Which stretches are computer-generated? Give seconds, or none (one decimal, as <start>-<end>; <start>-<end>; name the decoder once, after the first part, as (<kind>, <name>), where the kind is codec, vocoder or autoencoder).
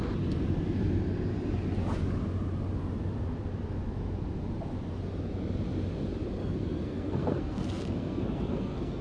6.4-9.0 (codec, SNAC)